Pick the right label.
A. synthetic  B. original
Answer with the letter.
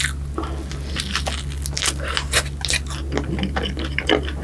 B